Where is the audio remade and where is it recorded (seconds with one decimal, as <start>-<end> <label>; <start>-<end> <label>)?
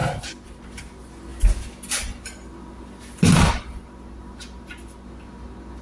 0.0-0.6 remade; 0.6-5.8 recorded